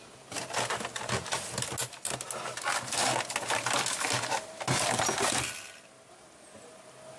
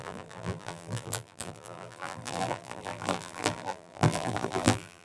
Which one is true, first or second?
first